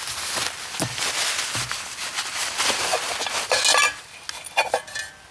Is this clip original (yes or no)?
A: yes